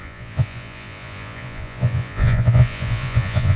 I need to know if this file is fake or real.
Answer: fake